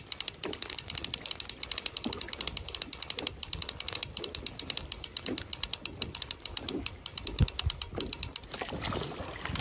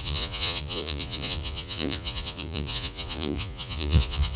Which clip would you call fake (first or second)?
second